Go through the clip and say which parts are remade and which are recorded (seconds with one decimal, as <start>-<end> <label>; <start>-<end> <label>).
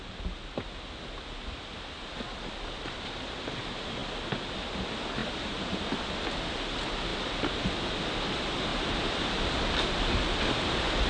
0.0-7.1 recorded; 7.1-8.0 remade; 8.0-8.7 recorded; 8.7-9.8 remade; 9.8-11.1 recorded